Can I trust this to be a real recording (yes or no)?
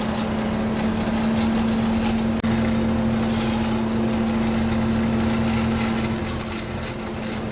yes